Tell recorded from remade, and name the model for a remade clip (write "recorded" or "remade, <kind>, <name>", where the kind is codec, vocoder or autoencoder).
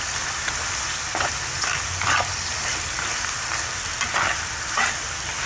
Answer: recorded